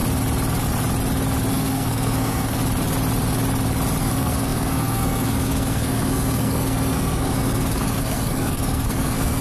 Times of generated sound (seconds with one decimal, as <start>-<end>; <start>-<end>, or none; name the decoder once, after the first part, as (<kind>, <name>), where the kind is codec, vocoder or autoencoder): 1.5-2.6 (codec, SNAC); 4.0-9.4

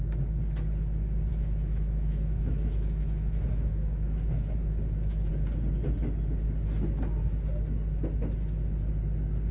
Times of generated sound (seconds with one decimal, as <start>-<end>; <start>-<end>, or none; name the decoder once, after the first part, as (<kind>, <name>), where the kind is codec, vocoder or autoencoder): 1.3-5.3 (autoencoder, DAC-VAE)